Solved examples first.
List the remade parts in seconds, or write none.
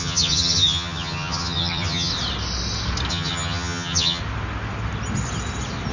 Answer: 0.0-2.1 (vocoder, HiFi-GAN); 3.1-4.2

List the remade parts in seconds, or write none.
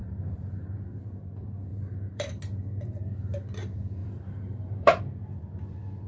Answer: 0.0-0.6 (vocoder, BigVGAN v2); 1.7-2.3; 4.0-5.0